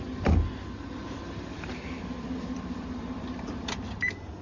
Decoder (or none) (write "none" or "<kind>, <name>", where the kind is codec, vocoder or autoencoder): vocoder, BigVGAN v2